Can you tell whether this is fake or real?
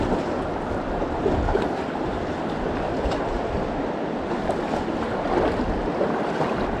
real